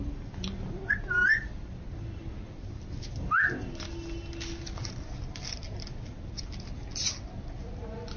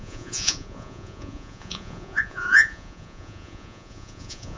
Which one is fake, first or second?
second